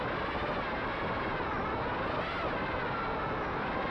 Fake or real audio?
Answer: real